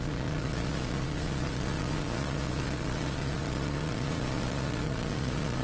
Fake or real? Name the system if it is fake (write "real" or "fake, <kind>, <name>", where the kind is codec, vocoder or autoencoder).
fake, vocoder, Vocos